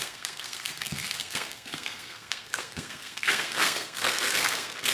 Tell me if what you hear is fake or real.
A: fake